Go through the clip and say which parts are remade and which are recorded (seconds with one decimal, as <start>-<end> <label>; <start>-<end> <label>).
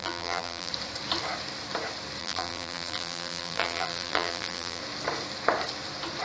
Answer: 0.0-0.7 remade; 0.7-2.2 recorded; 2.2-4.8 remade; 4.8-6.2 recorded